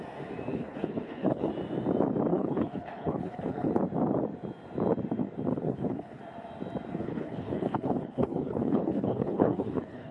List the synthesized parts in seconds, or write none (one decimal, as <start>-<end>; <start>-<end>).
0.5-1.5; 2.3-3.7; 5.5-6.2; 7.0-10.1

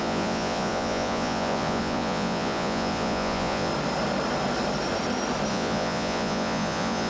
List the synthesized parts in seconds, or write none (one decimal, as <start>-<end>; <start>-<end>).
0.0-3.7; 5.5-7.1

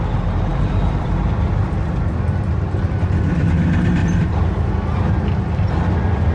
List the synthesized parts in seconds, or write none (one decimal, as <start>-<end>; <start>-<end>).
0.5-1.7; 4.0-4.7

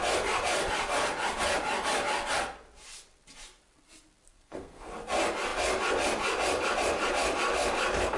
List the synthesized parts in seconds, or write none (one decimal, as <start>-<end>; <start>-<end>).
4.3-4.9